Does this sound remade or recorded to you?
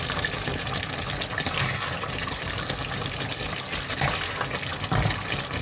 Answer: recorded